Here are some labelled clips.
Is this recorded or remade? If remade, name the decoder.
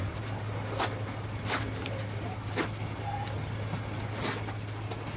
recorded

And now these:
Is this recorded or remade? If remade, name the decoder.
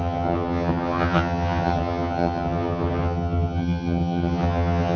remade, vocoder, HiFi-GAN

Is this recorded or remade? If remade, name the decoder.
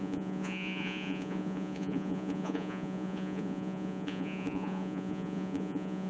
remade, vocoder, Vocos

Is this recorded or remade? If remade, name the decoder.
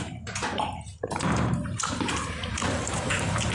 remade, vocoder, BigVGAN v2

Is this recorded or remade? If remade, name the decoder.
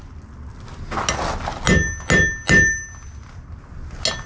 recorded